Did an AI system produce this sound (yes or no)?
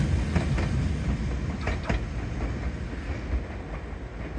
no